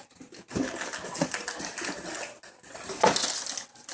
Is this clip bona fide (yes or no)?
yes